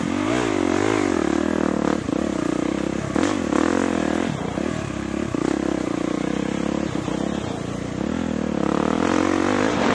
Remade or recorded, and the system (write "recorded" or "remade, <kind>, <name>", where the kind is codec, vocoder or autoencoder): recorded